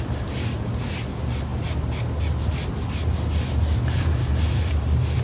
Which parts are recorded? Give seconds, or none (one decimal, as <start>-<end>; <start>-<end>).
0.0-5.2